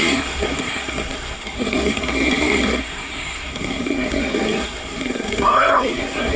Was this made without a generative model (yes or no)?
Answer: no